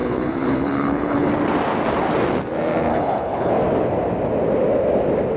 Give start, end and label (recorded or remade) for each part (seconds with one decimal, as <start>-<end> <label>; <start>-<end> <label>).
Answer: 0.0-1.3 remade; 1.3-2.9 recorded; 2.9-3.5 remade; 3.5-5.4 recorded